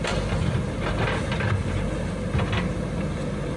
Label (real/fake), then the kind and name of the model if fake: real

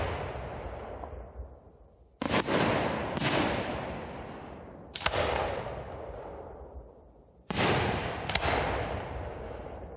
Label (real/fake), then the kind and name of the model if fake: real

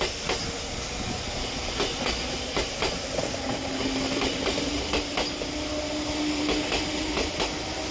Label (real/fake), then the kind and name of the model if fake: real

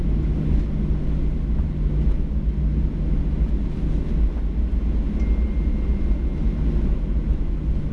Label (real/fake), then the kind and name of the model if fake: real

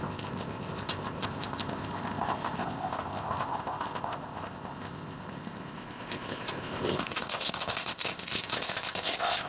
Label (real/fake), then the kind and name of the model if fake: fake, codec, ZipCodec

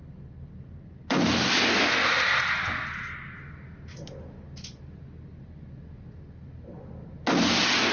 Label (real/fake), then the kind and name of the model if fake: real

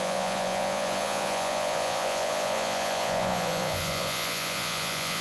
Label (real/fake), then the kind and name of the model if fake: fake, vocoder, Vocos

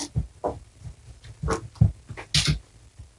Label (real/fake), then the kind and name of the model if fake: real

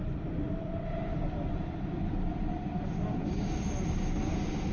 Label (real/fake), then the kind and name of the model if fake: real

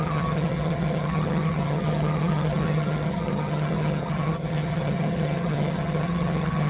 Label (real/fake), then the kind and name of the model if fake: fake, vocoder, HiFi-GAN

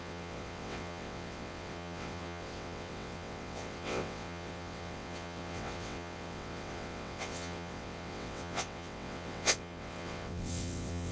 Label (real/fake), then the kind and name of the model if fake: fake, vocoder, WaveNeXt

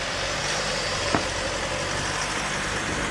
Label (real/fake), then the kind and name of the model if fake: real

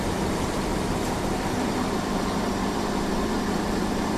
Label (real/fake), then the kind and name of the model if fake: fake, vocoder, BigVGAN v2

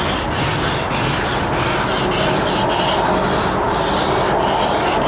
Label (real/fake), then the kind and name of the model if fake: real